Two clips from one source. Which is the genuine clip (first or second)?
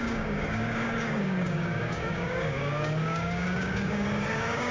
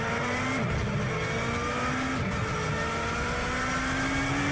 second